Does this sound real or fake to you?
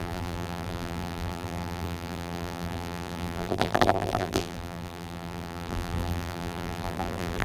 fake